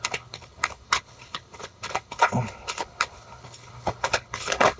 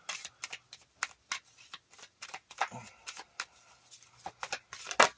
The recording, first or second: second